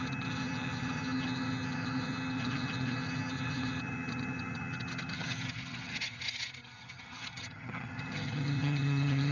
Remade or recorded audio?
remade